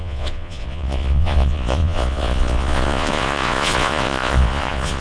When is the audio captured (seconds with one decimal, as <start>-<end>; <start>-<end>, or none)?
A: none